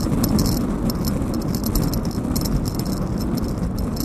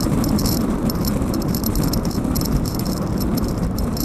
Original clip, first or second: first